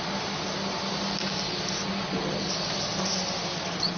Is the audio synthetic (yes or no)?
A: no